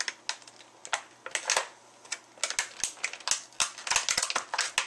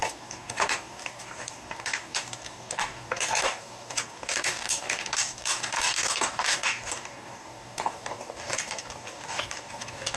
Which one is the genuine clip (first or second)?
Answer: first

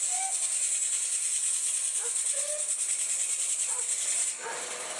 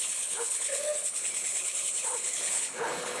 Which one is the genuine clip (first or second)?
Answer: first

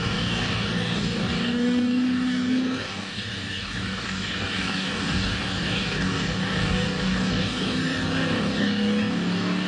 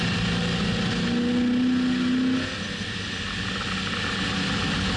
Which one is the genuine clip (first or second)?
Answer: second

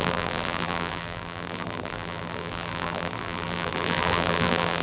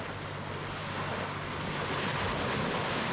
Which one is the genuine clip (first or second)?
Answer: second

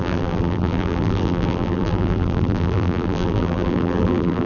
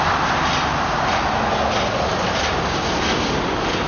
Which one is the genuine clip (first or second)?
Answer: second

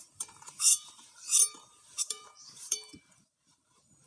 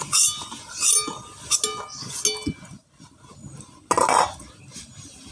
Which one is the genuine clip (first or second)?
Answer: second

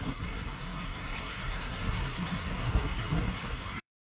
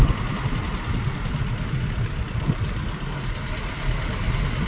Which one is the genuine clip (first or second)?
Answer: second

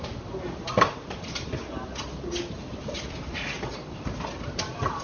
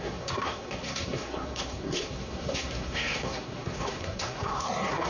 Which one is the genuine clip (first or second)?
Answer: first